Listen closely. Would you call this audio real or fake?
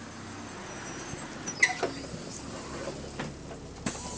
real